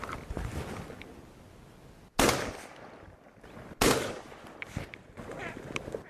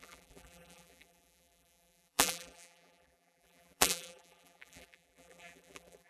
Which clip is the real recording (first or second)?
first